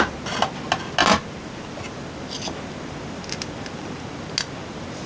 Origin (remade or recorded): recorded